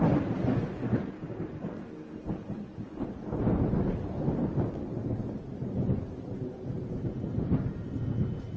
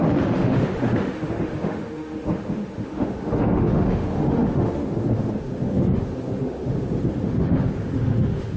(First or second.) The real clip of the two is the first